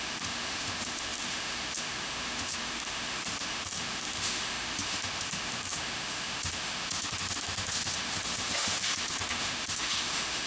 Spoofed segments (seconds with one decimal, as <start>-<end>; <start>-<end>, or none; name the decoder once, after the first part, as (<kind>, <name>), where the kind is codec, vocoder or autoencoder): 0.0-10.5 (autoencoder, DAC-VAE)